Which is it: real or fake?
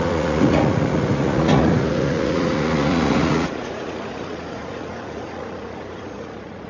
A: fake